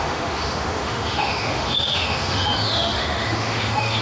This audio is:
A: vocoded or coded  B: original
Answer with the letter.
A